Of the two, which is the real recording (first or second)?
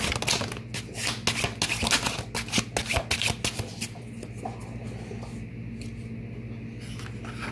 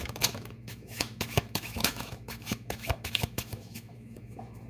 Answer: first